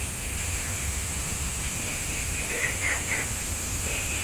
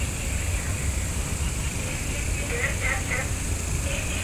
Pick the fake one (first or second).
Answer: first